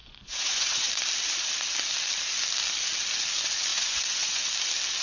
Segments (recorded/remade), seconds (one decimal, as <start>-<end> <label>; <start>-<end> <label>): 0.0-0.9 remade; 0.9-3.7 recorded; 3.7-4.4 remade; 4.4-5.0 recorded